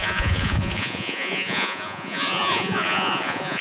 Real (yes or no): no